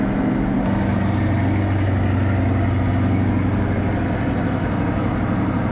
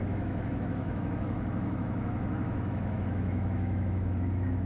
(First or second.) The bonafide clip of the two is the first